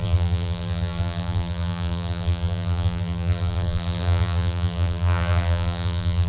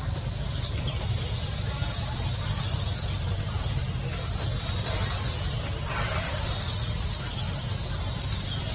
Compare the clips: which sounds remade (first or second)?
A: first